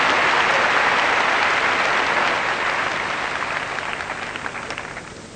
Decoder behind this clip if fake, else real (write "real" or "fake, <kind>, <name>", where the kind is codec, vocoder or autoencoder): real